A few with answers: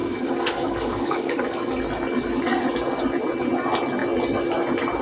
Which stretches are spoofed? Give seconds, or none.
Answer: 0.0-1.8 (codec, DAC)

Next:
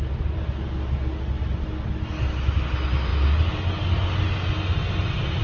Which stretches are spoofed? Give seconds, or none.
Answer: none